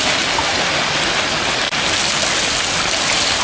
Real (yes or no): yes